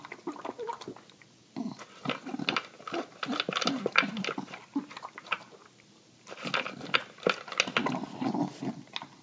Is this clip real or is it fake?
real